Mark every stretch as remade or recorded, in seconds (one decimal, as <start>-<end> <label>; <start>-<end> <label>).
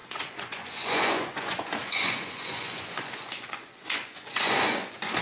0.0-5.2 remade